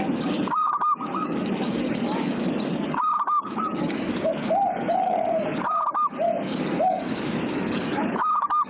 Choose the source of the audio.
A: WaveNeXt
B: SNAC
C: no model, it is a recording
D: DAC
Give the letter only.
D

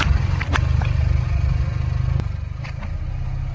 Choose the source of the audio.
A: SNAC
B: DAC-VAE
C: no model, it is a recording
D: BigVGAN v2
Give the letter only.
C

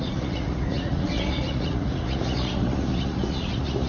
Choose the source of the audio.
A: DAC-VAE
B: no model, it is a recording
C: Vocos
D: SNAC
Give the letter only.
C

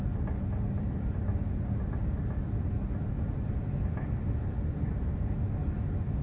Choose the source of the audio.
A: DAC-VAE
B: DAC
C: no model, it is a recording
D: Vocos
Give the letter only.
C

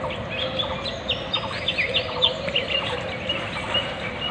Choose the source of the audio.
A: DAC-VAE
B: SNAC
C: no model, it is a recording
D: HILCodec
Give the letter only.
C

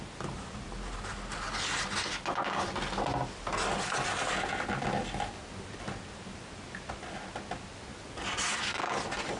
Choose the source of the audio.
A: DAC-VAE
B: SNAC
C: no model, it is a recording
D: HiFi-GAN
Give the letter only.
C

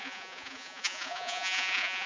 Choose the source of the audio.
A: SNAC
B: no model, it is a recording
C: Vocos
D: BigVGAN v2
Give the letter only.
C